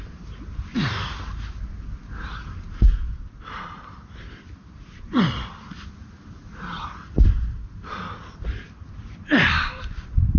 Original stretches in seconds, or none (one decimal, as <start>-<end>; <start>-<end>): 0.0-2.9; 5.5-10.4